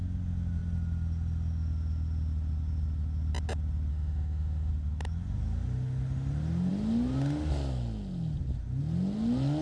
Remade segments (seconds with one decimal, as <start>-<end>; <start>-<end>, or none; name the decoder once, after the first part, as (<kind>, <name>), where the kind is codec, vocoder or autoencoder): 3.9-4.7 (autoencoder, DAC-VAE)